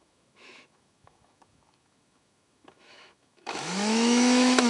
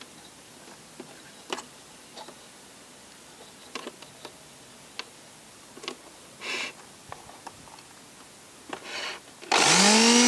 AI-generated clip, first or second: first